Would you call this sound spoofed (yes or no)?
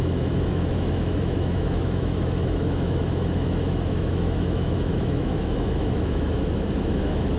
yes